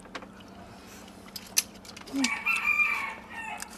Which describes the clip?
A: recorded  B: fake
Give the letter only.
A